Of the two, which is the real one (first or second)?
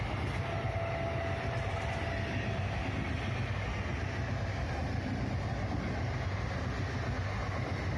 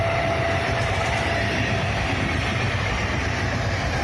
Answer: first